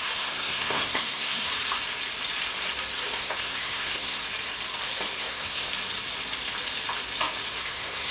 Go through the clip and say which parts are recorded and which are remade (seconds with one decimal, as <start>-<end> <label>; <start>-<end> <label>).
0.0-1.5 remade; 1.5-3.2 recorded; 3.2-4.2 remade; 4.2-5.2 recorded; 5.2-5.7 remade; 5.7-7.5 recorded; 7.5-8.1 remade